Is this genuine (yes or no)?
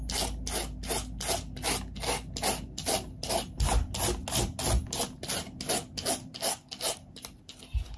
yes